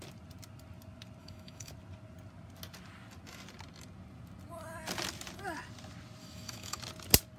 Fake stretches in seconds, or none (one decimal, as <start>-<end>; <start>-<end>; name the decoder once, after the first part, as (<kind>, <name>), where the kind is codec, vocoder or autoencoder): 1.2-1.7 (autoencoder, DAC-VAE); 6.2-6.8